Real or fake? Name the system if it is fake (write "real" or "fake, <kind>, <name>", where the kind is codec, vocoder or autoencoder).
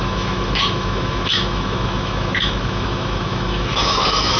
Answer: fake, autoencoder, DAC-VAE